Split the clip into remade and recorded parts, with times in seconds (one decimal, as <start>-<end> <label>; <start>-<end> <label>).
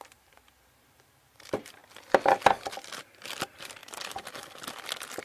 0.0-1.8 remade; 1.8-3.0 recorded; 3.0-3.8 remade; 3.8-5.2 recorded